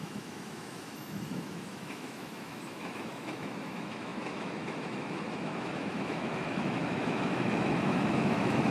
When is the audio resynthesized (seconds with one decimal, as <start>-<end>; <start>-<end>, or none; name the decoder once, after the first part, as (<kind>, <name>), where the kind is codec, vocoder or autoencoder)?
0.0-8.7 (autoencoder, DAC-VAE)